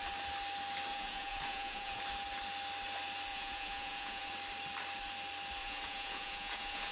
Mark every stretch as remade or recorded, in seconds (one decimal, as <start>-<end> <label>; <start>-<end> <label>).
0.0-0.9 recorded; 0.9-2.0 remade; 2.0-3.3 recorded; 3.3-4.3 remade; 4.3-5.6 recorded; 5.6-6.9 remade